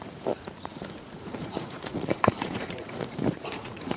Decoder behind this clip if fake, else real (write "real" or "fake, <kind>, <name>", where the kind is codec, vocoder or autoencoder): fake, vocoder, Vocos